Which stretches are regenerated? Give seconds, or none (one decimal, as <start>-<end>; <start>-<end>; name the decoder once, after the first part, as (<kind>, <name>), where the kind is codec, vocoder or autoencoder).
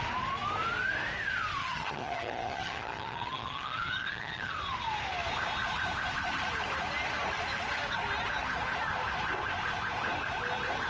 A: 1.6-4.5 (vocoder, HiFi-GAN)